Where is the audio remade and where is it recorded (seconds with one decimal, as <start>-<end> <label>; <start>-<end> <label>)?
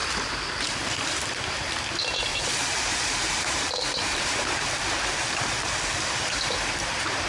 0.0-2.3 recorded; 2.3-5.7 remade; 5.7-7.3 recorded